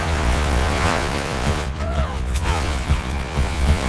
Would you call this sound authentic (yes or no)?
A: no